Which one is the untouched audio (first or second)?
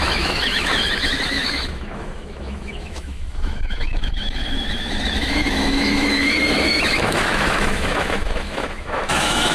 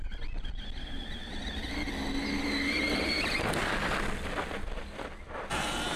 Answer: second